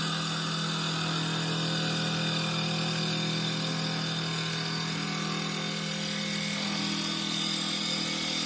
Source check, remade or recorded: recorded